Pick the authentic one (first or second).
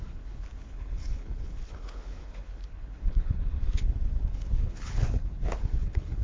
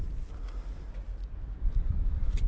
second